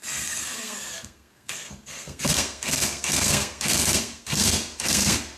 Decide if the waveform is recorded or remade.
remade